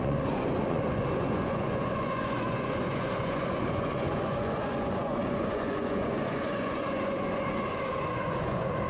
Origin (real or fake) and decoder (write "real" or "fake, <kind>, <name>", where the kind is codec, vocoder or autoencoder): fake, vocoder, Vocos